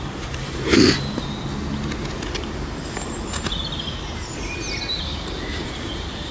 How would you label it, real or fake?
real